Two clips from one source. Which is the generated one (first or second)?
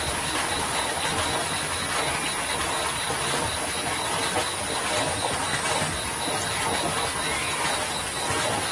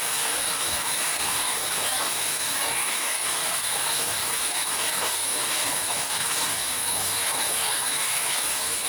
second